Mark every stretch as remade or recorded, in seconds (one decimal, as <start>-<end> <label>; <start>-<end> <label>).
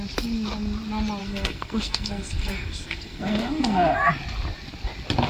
0.0-1.2 recorded; 1.2-4.1 remade; 4.1-5.3 recorded